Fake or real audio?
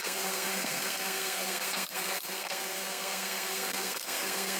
fake